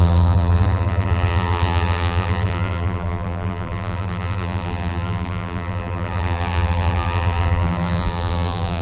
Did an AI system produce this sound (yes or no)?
yes